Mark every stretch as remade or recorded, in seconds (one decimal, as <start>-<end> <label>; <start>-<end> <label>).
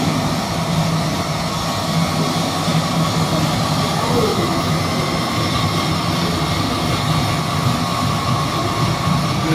0.0-4.3 recorded; 4.3-4.8 remade; 4.8-9.5 recorded